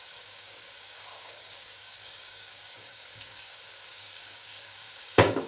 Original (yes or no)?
no